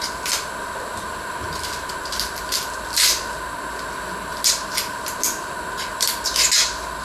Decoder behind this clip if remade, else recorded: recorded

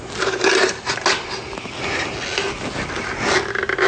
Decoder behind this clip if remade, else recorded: recorded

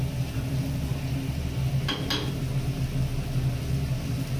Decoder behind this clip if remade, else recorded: recorded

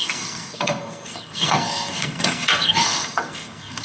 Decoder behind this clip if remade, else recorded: remade, codec, SNAC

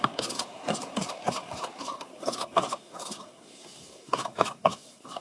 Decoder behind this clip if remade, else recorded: remade, codec, SNAC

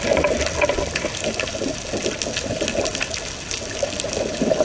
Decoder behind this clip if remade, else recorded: recorded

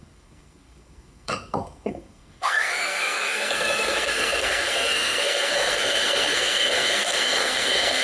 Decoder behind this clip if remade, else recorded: remade, codec, SNAC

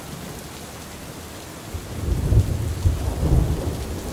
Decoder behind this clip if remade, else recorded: recorded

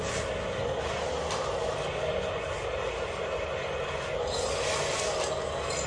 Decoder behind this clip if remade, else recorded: recorded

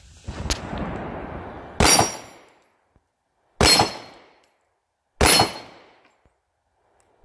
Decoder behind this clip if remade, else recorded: recorded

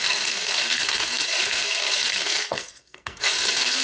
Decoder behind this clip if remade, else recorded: remade, codec, SNAC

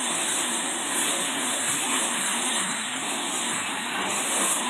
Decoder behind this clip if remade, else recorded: remade, codec, SNAC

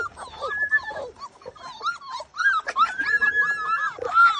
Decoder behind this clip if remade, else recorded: recorded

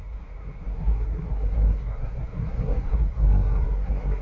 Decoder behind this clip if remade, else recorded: remade, codec, SNAC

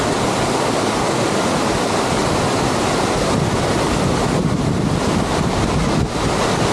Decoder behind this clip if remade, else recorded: recorded